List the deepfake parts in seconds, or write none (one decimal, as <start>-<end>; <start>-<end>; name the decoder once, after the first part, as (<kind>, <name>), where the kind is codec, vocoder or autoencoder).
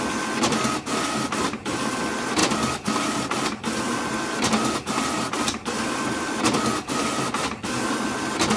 none